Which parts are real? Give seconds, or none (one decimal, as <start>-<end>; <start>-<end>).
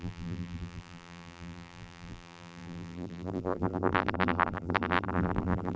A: none